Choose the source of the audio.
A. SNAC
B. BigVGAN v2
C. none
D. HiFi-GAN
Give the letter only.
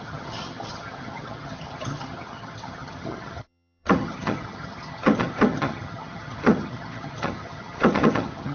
D